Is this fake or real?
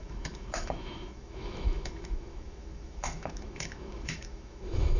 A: fake